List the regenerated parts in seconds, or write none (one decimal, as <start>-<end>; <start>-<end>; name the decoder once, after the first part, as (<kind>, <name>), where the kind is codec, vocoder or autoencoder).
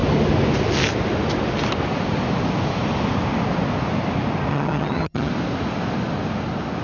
4.5-5.3 (vocoder, HiFi-GAN)